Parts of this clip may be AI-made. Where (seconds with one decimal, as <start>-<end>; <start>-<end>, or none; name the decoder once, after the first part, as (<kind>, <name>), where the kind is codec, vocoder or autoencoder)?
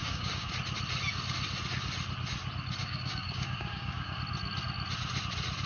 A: 0.0-0.5 (codec, DAC); 2.8-4.2